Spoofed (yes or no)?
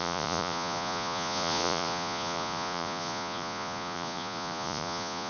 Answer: yes